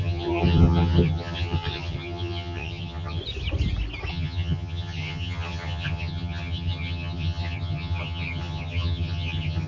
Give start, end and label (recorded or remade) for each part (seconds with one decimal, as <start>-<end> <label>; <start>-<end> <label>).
0.0-3.2 remade; 3.2-4.1 recorded; 4.1-9.7 remade